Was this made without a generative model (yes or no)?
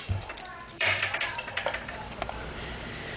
no